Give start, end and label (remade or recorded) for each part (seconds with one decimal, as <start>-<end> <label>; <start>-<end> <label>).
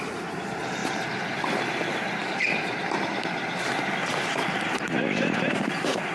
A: 0.0-0.8 remade; 0.8-4.1 recorded; 4.1-6.1 remade